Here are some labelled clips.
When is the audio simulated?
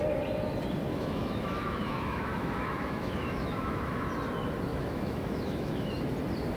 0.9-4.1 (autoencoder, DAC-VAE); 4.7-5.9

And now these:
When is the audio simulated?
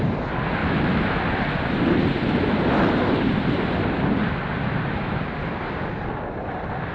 0.6-1.2 (autoencoder, DAC-VAE); 4.6-5.2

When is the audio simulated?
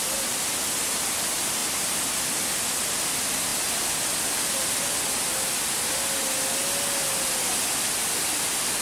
none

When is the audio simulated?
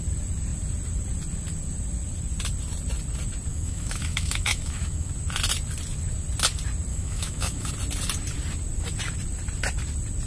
3.5-5.1 (autoencoder, DAC-VAE); 6.9-7.7